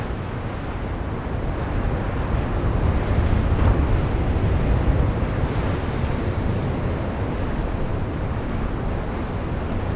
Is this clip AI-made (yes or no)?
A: no